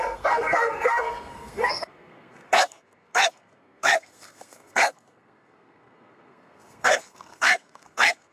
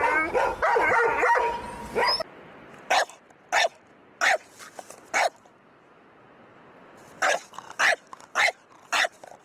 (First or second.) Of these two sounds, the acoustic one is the second